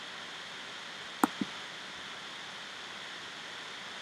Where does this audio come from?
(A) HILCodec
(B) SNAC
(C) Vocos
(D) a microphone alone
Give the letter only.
D